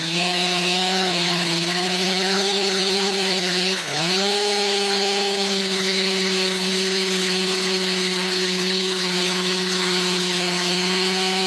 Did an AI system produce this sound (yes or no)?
yes